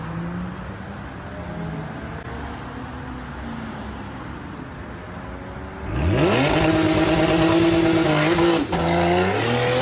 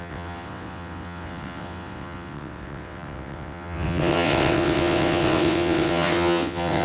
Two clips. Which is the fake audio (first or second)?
second